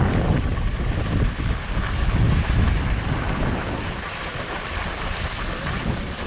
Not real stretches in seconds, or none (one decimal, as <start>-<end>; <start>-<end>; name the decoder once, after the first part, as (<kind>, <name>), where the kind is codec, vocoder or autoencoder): none